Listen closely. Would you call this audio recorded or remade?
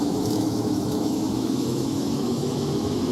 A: remade